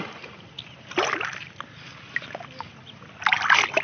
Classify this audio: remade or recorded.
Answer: recorded